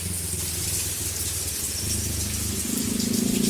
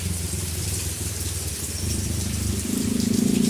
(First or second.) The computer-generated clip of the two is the second